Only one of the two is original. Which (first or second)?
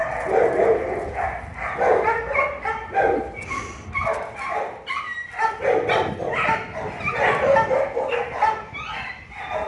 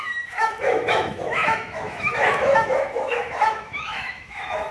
first